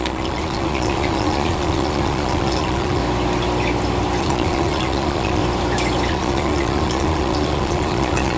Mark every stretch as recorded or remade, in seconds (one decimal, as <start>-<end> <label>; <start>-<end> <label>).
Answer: 0.0-3.0 remade; 3.0-4.2 recorded; 4.2-5.4 remade; 5.4-6.1 recorded; 6.1-8.4 remade